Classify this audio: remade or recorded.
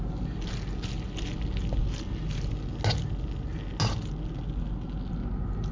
recorded